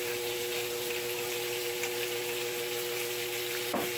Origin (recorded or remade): recorded